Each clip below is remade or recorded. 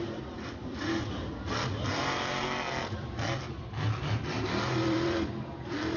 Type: remade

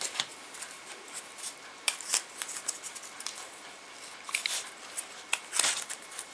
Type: remade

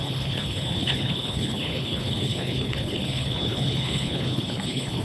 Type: remade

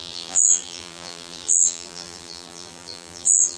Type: remade